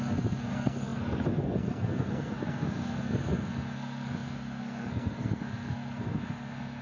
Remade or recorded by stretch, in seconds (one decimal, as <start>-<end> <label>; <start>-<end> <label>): 0.0-6.8 remade